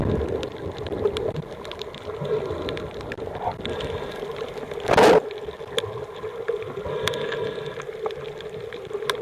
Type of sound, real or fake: real